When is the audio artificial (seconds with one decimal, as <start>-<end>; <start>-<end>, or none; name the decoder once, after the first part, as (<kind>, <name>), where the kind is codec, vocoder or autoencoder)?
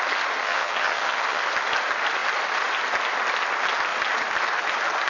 0.4-1.4 (vocoder, HiFi-GAN)